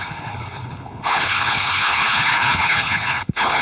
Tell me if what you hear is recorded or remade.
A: remade